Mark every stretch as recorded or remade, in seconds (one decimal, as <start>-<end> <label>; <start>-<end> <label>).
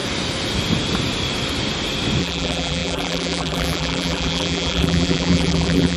0.0-2.2 recorded; 2.2-6.0 remade